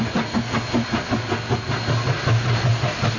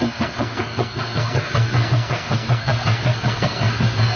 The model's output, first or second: second